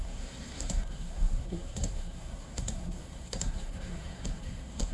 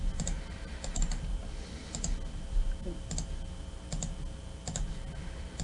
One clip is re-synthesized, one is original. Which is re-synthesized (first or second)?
first